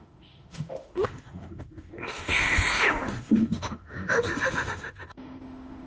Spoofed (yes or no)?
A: yes